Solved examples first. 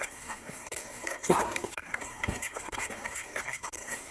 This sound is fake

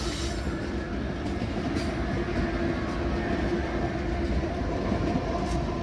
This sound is real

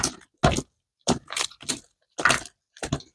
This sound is real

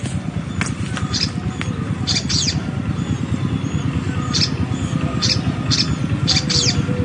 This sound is real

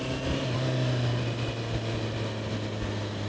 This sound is real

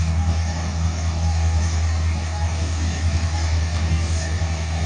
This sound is fake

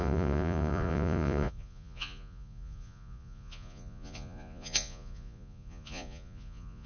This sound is fake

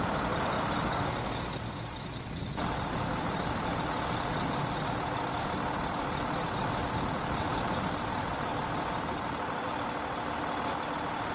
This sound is real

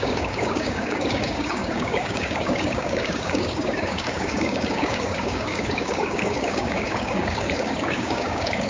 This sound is fake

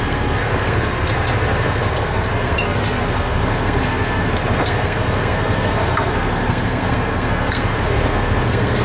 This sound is fake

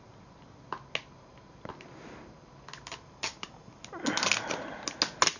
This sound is real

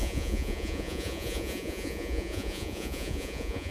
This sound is fake